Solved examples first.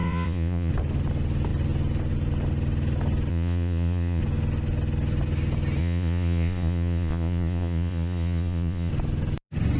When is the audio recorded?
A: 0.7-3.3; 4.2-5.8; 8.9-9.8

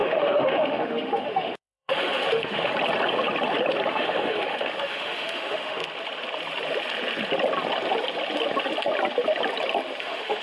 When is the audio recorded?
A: 2.7-3.9; 5.8-10.0